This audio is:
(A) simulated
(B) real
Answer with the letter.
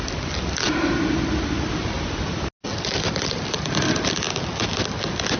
B